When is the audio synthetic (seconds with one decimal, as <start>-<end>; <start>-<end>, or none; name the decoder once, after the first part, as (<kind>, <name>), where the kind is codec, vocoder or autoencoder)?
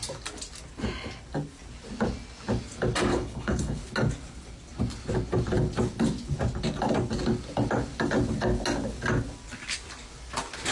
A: 3.1-3.8 (codec, HILCodec)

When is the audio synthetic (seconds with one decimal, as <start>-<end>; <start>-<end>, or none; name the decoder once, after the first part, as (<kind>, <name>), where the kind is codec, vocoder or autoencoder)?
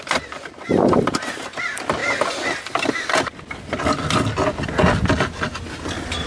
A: 0.0-2.0 (vocoder, BigVGAN v2); 5.8-6.3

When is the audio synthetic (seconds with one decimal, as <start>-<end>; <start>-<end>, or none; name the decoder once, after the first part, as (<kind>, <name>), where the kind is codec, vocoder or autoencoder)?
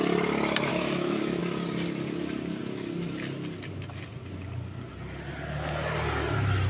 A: 0.7-1.4 (autoencoder, DAC-VAE)